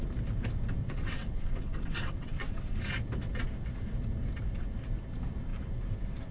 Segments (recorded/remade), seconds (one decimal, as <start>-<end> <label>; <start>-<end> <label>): 0.0-0.8 recorded; 0.8-2.8 remade; 2.8-6.3 recorded